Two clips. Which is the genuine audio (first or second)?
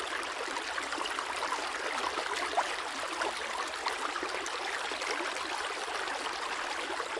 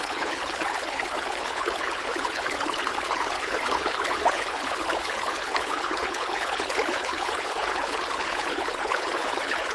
first